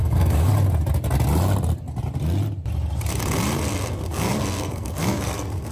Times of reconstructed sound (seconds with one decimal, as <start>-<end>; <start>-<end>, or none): 0.0-0.5; 3.9-5.7